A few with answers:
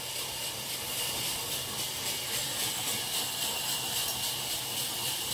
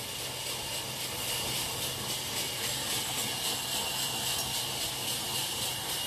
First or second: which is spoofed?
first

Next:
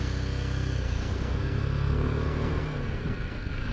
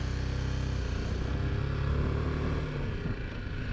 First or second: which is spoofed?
first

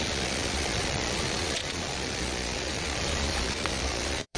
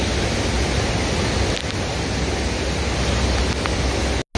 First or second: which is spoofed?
first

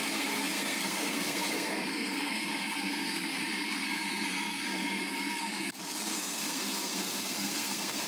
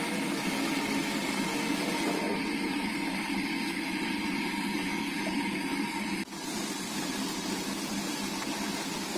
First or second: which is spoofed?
first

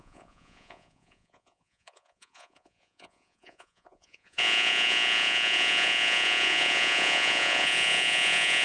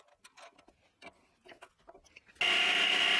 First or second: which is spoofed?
first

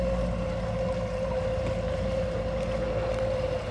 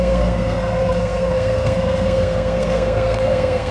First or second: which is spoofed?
second